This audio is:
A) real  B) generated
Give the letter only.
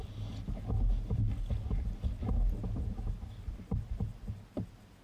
A